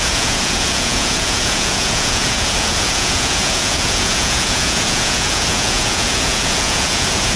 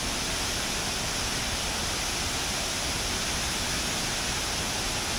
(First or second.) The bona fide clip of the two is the second